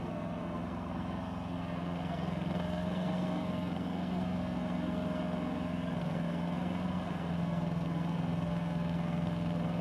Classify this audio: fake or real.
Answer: fake